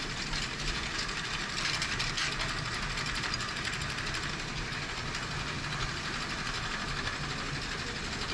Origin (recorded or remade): recorded